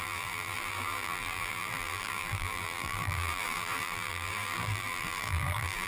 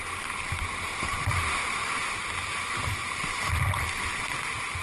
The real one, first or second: second